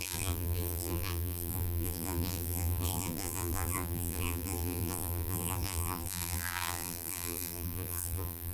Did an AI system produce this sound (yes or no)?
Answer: yes